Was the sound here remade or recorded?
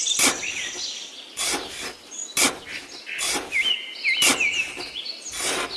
recorded